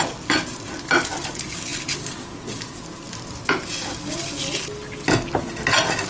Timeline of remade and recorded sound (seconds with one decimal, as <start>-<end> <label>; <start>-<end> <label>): 0.0-6.1 recorded